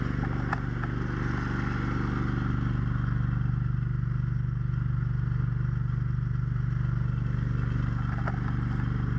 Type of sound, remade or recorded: recorded